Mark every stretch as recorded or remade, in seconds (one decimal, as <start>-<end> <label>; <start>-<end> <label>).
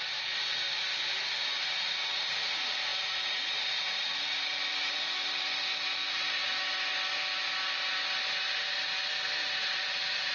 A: 0.0-10.3 recorded